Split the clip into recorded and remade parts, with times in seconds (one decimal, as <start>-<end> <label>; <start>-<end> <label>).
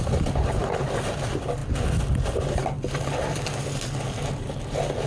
0.0-5.1 recorded